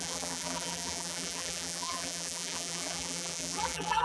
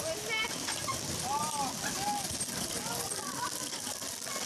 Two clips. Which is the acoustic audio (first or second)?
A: second